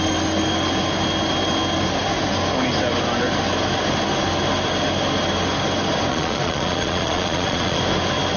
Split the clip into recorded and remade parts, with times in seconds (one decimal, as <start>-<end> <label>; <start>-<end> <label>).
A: 0.0-6.1 recorded; 6.1-7.8 remade; 7.8-8.4 recorded